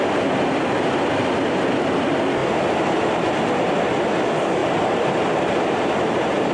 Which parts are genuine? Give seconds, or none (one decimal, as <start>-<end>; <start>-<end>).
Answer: 0.0-2.4; 3.8-4.6